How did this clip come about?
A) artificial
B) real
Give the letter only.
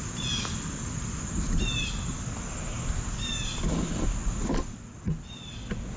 B